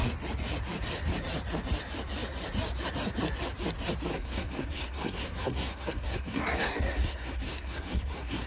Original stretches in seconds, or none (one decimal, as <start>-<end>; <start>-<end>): 0.0-4.1